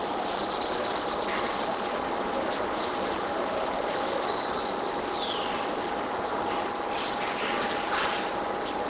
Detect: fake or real real